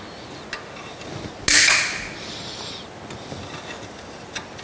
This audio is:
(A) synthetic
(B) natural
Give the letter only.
B